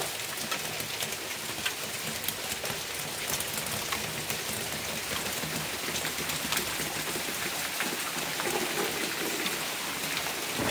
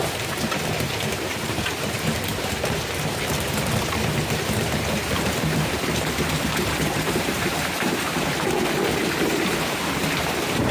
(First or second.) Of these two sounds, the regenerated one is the second